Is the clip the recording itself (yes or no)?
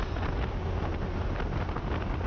yes